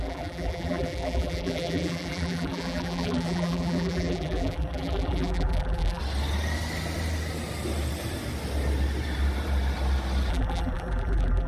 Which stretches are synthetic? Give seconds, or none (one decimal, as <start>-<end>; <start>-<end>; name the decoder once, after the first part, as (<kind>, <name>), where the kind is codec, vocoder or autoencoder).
0.0-6.0 (vocoder, BigVGAN v2); 10.3-11.5

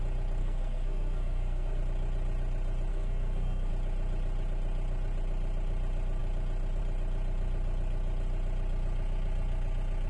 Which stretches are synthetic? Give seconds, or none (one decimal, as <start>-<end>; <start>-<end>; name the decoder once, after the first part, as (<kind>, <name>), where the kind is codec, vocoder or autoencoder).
0.4-1.8 (codec, SNAC); 2.9-3.7

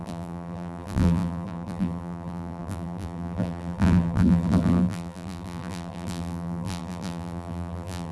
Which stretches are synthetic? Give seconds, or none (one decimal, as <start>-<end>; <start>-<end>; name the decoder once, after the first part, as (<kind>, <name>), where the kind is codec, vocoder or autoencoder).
0.0-8.1 (vocoder, BigVGAN v2)

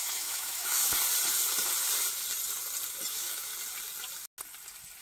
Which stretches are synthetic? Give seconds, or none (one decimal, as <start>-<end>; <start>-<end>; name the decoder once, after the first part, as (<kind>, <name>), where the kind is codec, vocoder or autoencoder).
0.0-0.8 (autoencoder, DAC-VAE); 3.1-3.5

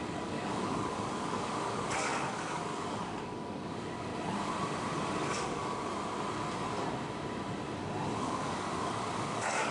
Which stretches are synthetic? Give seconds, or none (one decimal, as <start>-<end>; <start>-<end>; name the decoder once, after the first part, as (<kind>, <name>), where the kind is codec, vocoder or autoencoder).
0.0-4.1 (codec, DAC); 5.1-5.8; 8.2-9.7